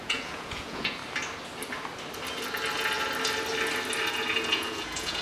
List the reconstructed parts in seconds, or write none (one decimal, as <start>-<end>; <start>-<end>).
0.0-1.0; 4.1-5.2